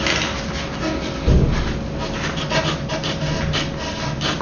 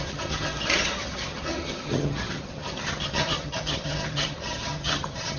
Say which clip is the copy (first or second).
second